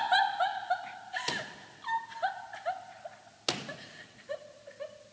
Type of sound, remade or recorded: recorded